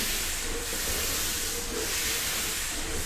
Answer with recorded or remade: recorded